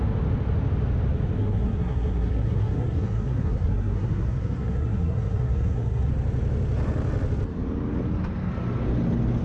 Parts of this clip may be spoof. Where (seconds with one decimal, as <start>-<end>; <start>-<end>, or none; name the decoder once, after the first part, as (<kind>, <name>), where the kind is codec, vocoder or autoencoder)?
1.4-6.1 (codec, SNAC)